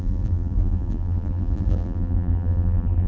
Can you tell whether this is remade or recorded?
remade